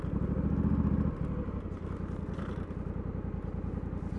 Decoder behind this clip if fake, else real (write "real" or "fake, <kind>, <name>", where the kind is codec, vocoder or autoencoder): real